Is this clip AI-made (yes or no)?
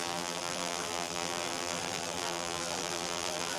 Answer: yes